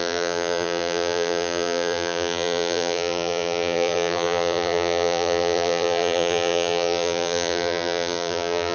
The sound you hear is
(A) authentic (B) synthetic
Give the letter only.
B